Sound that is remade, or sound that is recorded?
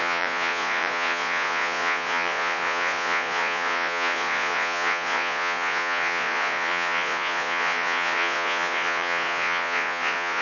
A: remade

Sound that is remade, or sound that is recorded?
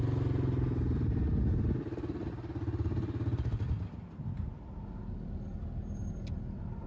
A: recorded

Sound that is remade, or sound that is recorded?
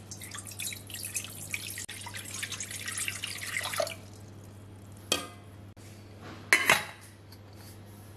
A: recorded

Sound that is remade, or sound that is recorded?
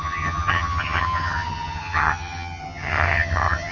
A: remade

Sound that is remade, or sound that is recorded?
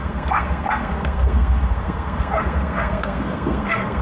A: remade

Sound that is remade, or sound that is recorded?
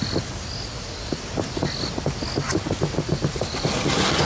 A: recorded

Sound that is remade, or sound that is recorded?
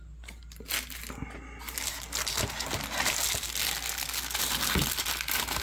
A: recorded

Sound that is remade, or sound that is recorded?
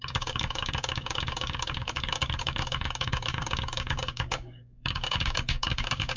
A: remade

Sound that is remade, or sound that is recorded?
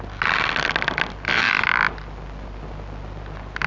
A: recorded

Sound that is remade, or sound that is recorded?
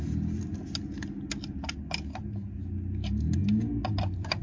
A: recorded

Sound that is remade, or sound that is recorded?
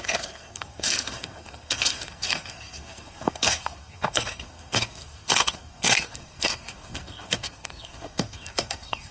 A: remade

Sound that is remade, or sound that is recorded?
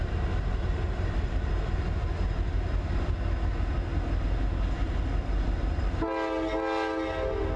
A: recorded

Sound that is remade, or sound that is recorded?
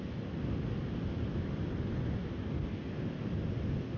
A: recorded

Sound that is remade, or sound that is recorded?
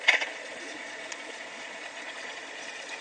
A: remade